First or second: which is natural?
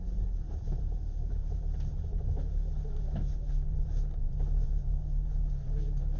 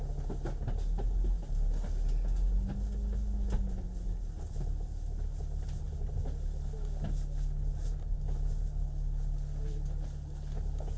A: second